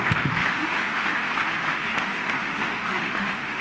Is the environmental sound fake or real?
fake